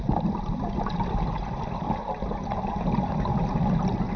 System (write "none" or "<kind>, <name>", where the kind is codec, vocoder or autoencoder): none